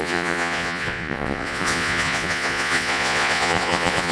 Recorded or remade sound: remade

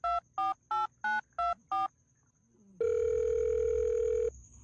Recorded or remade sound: recorded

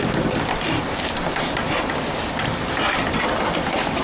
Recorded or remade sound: recorded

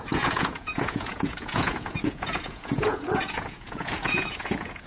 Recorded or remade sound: remade